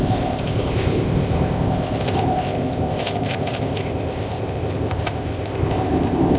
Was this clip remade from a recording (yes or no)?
yes